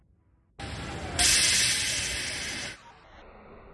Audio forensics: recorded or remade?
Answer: recorded